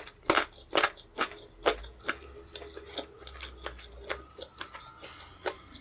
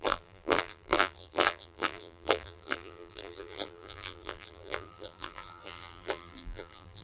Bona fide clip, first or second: first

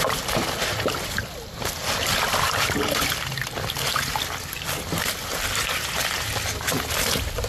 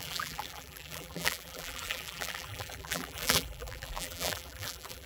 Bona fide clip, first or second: first